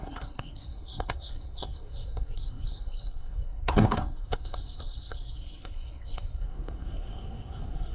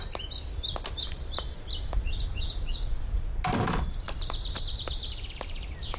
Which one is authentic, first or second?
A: second